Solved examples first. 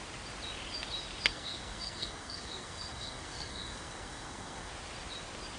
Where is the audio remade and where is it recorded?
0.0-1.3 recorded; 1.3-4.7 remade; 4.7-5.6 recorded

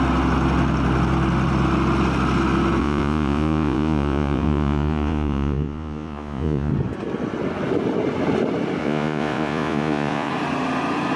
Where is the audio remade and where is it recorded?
0.0-2.8 recorded; 2.8-6.7 remade; 6.7-8.8 recorded; 8.8-10.3 remade; 10.3-11.2 recorded